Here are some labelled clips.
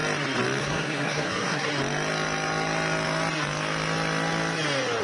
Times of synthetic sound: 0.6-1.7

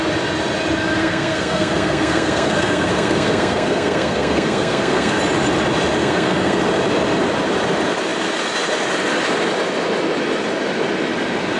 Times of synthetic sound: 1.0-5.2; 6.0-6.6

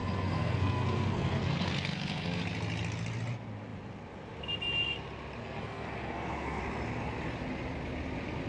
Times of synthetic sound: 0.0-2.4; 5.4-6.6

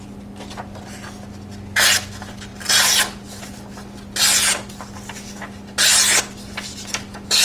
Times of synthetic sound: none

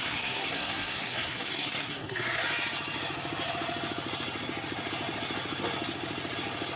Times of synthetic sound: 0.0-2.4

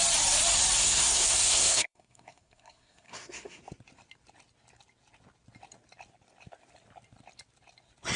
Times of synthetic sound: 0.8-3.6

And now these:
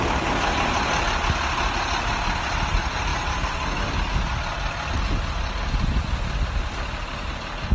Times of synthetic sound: none

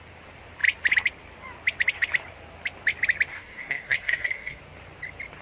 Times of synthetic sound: 3.3-4.6